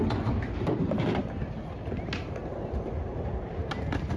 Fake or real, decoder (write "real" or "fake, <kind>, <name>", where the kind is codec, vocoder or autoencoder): real